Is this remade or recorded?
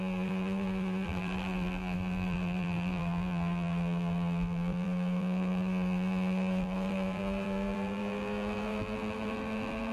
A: remade